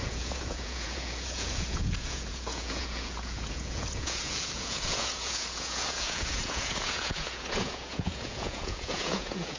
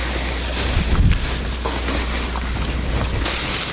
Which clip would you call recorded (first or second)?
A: second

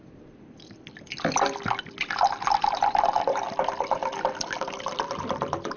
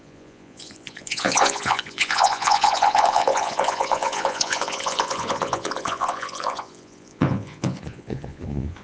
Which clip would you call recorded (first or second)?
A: first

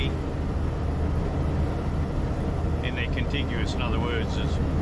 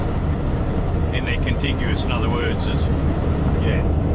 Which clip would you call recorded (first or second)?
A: first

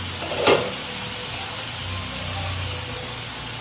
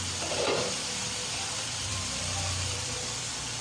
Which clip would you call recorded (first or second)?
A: first